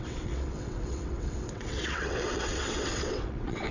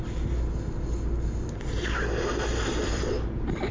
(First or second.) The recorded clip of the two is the second